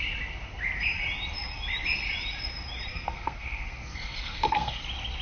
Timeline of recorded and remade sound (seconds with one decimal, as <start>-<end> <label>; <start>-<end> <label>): 0.0-2.9 recorded; 2.9-4.8 remade; 4.8-5.2 recorded